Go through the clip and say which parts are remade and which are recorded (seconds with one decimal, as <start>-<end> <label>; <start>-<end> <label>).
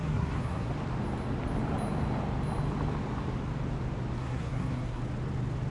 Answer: 0.0-0.7 remade; 0.7-4.2 recorded; 4.2-5.0 remade; 5.0-5.7 recorded